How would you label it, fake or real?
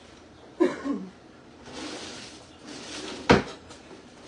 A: real